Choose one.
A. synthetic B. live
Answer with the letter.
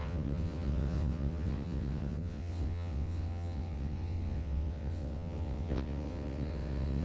A